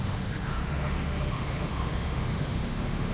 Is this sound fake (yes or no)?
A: yes